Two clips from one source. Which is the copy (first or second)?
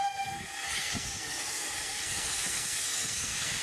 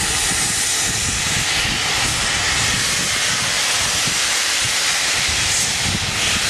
first